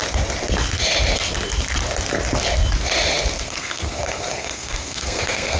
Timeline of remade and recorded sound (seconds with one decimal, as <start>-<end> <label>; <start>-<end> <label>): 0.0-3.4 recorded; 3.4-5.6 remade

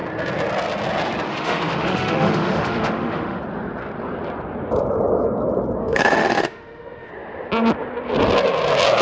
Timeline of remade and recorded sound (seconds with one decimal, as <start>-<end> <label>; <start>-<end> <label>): 0.0-1.3 recorded; 1.3-3.4 remade; 3.4-5.8 recorded; 5.8-7.1 remade; 7.1-9.0 recorded

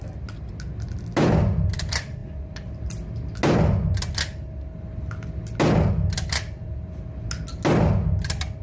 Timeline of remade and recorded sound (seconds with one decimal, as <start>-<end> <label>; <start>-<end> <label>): 0.0-8.6 recorded